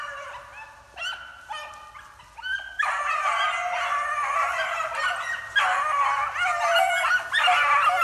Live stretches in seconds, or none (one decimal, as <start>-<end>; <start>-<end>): 0.0-8.0